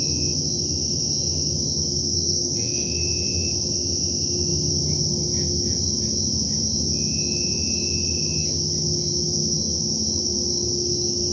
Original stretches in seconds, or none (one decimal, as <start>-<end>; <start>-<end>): 0.0-2.0; 3.0-11.3